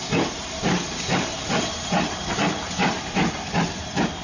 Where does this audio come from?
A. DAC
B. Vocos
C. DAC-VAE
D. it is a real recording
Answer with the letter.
D